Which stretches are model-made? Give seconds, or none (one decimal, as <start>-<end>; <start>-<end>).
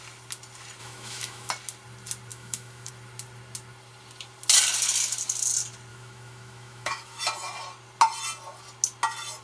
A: 0.8-1.5; 2.3-2.9; 5.9-7.2